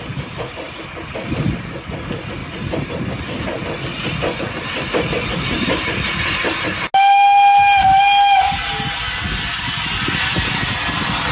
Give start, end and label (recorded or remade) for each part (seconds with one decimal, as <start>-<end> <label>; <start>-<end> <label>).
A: 0.0-11.3 recorded